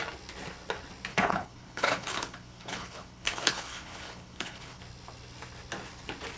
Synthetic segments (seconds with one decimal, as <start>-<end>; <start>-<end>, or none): 1.1-4.8